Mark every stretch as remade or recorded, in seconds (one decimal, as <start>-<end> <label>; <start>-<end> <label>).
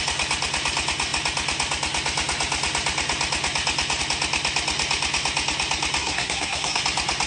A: 0.0-6.0 recorded; 6.0-6.8 remade; 6.8-7.3 recorded